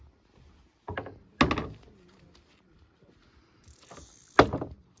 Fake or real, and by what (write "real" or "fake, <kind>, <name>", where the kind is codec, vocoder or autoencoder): real